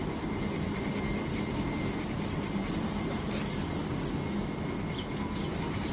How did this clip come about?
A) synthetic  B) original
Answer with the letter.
B